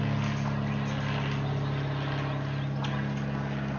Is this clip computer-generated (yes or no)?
no